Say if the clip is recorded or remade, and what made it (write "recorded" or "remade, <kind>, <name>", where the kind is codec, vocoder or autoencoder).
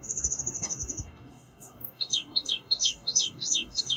remade, codec, DAC